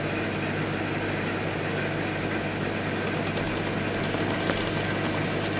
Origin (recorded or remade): recorded